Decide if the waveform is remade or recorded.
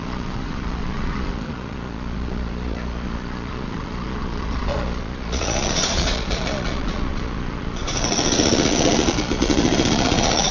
remade